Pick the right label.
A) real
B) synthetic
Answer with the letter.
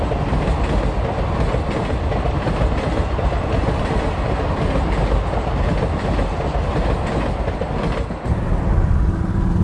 A